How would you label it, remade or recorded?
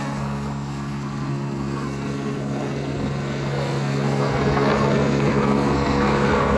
remade